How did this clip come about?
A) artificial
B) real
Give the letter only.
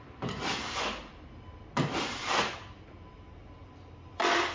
B